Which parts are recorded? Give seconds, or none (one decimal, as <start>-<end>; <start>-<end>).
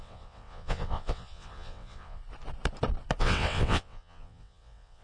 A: 2.2-3.2